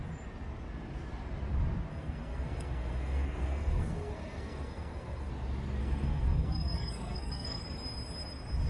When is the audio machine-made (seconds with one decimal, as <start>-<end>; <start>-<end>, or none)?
1.9-5.3; 5.8-7.6